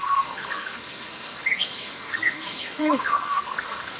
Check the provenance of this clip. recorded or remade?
remade